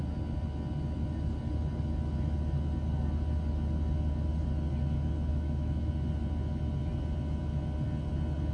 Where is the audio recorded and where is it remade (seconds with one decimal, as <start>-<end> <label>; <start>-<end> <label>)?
0.0-5.3 recorded; 5.3-5.9 remade; 5.9-8.5 recorded